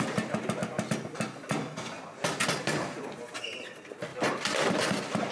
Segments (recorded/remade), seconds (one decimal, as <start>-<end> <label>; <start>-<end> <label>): 0.0-4.1 recorded; 4.1-5.3 remade